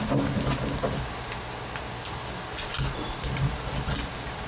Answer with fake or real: real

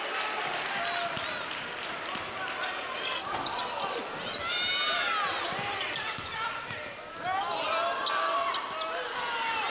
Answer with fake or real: real